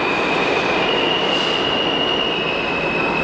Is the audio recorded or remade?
recorded